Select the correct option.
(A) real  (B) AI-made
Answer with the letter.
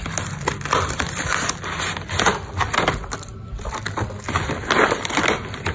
A